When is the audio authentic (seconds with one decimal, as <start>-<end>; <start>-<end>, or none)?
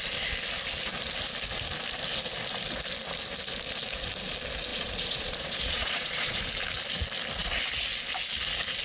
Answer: 0.0-4.7; 6.4-8.8